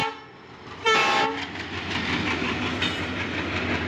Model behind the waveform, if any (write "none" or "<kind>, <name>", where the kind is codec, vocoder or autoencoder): none